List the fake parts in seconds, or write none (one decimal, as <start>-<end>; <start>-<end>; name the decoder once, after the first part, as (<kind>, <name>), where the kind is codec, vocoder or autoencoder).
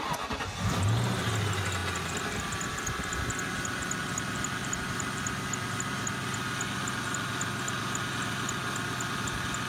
none